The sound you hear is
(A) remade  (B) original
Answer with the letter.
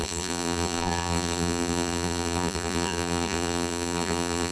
A